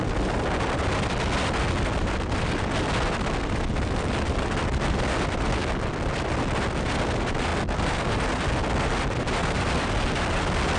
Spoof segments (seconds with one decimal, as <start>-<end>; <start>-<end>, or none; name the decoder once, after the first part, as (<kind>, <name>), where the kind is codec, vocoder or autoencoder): none